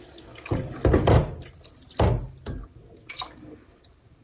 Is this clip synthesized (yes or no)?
no